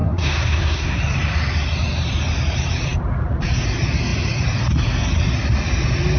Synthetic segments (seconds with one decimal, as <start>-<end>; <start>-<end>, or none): 0.0-1.0